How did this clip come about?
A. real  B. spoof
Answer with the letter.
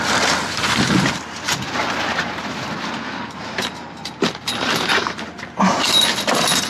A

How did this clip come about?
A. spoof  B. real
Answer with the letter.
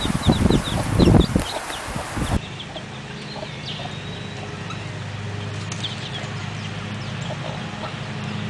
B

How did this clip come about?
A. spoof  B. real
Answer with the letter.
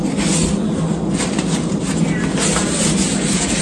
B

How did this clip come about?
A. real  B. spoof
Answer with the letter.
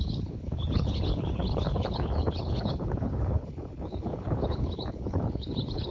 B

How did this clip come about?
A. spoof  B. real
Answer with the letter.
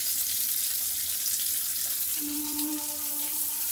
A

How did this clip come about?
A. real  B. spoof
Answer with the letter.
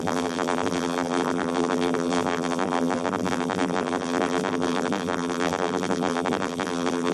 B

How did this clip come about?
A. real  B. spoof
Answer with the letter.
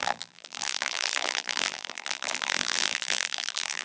B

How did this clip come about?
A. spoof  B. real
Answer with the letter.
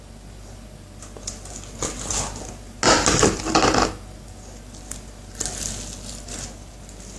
B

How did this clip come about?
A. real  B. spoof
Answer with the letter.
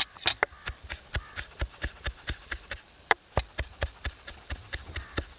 B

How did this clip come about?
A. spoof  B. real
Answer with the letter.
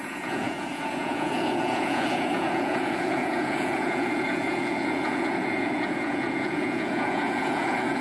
A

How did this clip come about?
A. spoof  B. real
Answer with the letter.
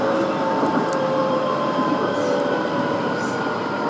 A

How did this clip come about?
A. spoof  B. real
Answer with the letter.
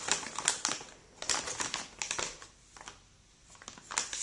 B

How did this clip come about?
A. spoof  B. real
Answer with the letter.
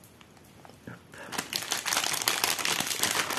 B